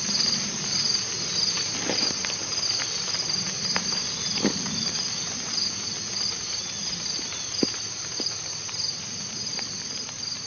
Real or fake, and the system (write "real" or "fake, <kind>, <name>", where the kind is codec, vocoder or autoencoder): real